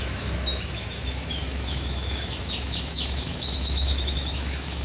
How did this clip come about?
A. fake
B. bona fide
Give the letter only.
A